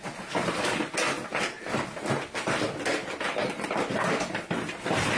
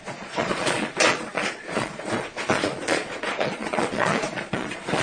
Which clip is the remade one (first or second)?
second